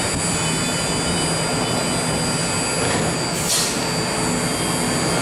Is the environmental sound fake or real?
real